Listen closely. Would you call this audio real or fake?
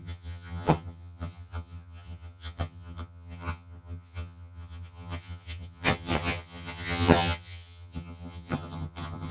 fake